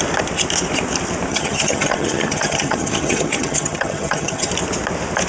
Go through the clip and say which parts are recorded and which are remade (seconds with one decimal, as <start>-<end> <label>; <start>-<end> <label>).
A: 0.0-1.3 recorded; 1.3-4.5 remade; 4.5-5.3 recorded